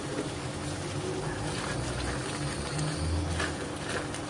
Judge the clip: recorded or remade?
recorded